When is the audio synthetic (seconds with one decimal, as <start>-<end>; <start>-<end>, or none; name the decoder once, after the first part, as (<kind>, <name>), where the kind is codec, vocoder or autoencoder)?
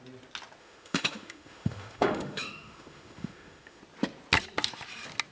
0.6-3.8 (autoencoder, DAC-VAE)